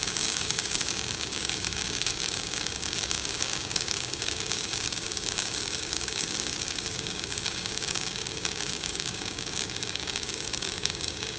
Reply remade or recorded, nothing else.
remade